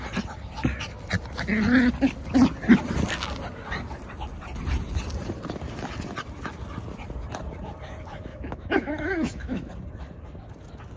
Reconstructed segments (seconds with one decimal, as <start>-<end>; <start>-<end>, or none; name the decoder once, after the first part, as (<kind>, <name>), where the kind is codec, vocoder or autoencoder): 8.3-9.7 (autoencoder, DAC-VAE)